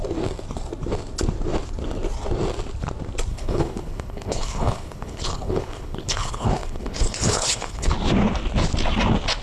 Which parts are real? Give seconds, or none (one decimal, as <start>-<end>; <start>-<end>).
0.0-3.3; 7.9-9.4